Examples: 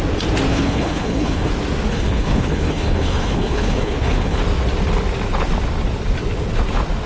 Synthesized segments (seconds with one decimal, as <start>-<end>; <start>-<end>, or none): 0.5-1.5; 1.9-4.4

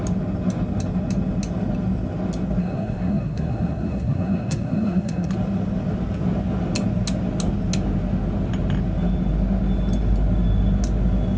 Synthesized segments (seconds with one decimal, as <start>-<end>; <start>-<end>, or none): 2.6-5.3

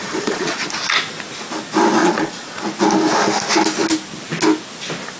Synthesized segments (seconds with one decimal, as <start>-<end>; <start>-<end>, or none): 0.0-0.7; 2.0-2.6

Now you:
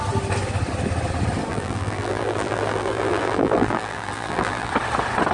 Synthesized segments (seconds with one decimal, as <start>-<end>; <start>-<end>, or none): 1.5-4.7

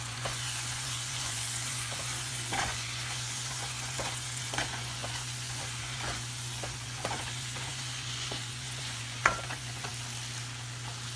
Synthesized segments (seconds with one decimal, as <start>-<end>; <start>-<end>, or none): 0.0-9.9